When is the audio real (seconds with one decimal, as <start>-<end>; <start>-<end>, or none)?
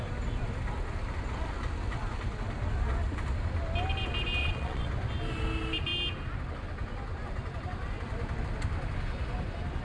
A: 0.0-4.4; 4.9-9.8